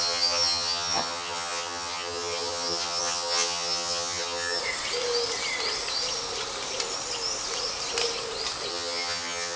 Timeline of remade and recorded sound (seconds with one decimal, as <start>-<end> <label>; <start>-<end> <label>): 0.0-4.6 remade; 4.6-8.7 recorded; 8.7-9.6 remade